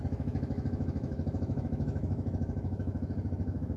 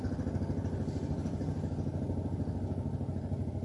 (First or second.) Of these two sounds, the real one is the second